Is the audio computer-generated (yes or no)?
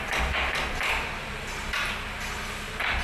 no